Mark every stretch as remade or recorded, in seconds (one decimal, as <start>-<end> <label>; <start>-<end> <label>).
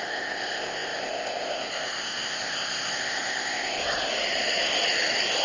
0.0-3.8 remade; 3.8-5.4 recorded